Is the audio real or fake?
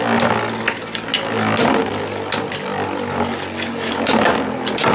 real